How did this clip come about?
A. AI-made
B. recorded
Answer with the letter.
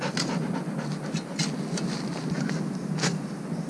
B